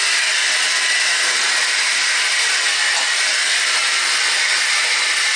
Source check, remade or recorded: recorded